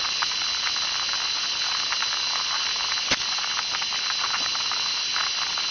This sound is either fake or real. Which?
real